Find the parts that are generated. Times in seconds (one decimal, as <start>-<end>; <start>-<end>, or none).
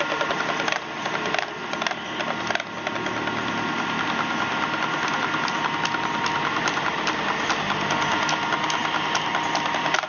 none